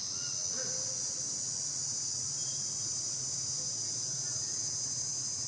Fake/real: real